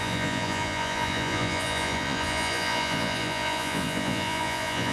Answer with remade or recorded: remade